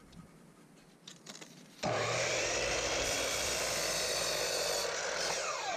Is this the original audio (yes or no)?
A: no